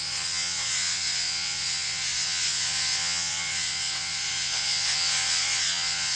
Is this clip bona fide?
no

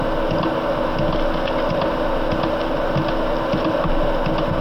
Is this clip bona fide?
yes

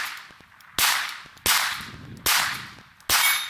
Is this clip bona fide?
yes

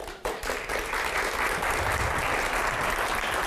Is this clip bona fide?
yes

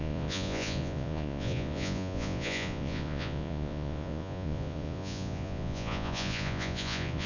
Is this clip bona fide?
no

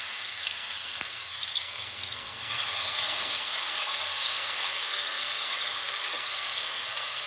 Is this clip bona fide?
no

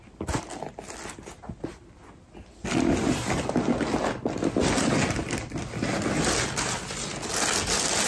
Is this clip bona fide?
yes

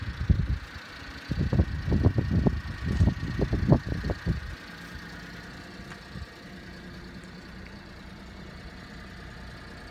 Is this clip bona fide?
yes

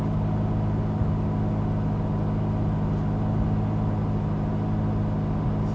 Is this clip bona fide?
yes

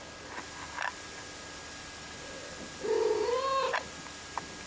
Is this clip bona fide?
yes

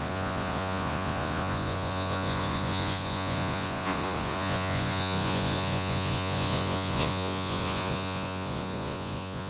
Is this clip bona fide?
no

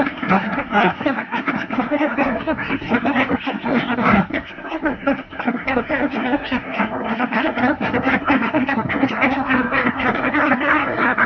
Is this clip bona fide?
no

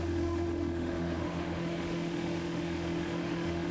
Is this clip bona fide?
no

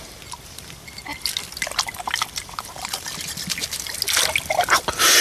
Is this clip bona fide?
yes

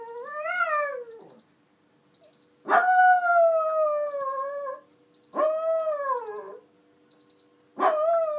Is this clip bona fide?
yes